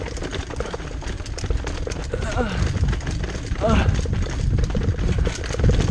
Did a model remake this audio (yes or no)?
no